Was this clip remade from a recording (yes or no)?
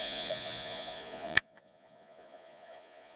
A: yes